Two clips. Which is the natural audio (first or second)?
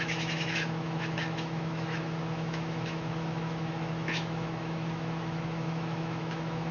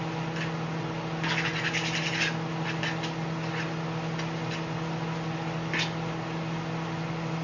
second